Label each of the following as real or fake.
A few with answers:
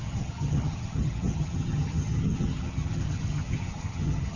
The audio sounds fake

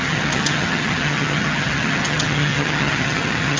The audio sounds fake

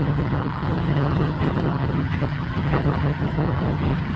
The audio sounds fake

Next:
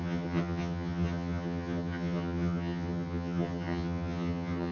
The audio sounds fake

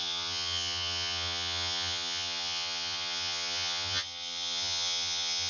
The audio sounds fake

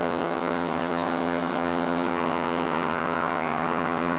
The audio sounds fake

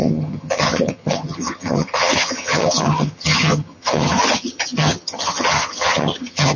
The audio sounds fake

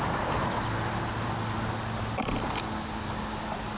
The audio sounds real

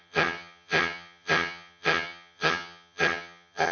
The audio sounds fake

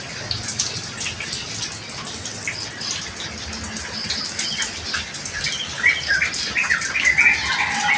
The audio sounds real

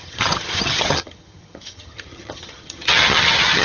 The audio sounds fake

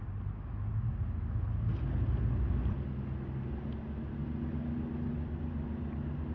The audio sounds real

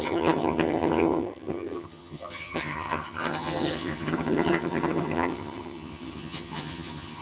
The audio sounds fake